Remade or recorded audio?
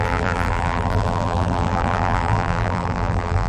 remade